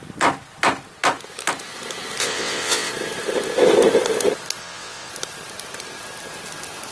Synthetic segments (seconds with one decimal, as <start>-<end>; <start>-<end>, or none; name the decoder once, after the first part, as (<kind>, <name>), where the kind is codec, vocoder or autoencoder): 2.2-2.9 (vocoder, WaveNeXt); 4.6-5.1